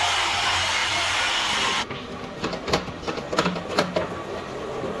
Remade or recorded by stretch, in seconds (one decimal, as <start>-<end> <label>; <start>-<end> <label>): 0.0-5.0 recorded